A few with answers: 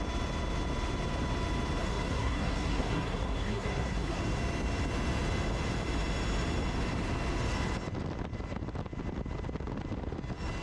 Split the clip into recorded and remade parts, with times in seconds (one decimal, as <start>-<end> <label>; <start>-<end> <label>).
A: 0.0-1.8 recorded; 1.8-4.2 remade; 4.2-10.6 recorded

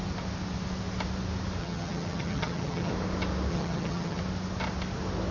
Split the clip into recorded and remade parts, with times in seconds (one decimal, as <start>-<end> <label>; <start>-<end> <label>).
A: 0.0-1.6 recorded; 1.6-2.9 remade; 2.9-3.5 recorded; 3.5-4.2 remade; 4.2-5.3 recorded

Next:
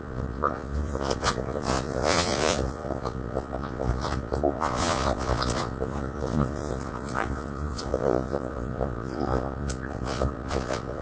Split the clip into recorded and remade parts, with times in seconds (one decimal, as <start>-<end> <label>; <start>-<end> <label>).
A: 0.0-11.0 remade

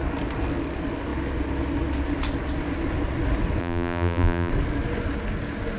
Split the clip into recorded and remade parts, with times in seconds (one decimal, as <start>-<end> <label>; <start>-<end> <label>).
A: 0.0-3.6 recorded; 3.6-4.5 remade; 4.5-5.8 recorded

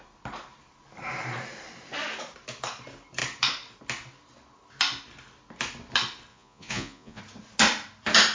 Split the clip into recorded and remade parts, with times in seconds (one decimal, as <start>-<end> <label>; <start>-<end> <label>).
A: 0.0-6.3 recorded; 6.3-7.2 remade; 7.2-8.3 recorded

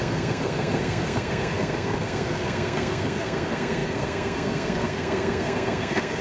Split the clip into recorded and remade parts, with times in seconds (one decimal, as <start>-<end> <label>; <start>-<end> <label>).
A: 0.0-6.2 remade